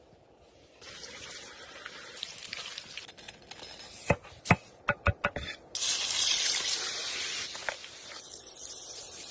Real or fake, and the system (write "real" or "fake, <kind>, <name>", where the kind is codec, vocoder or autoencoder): real